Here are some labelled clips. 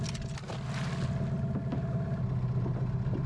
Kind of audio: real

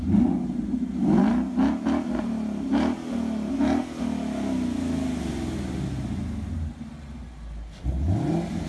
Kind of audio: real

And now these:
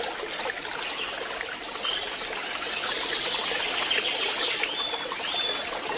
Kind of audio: real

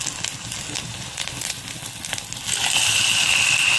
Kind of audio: real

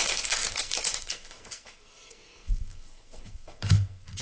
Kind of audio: fake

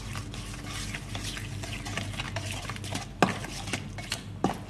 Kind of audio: real